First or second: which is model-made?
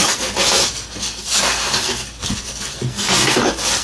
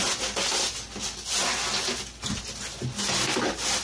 first